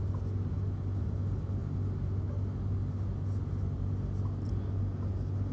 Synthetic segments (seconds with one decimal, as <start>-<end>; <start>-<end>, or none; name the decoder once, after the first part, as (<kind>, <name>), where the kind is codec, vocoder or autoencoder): none

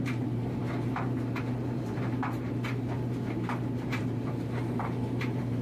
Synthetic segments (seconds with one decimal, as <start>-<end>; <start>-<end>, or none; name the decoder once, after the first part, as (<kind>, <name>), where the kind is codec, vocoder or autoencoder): 0.0-5.6 (vocoder, BigVGAN v2)